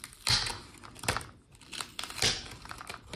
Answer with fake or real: real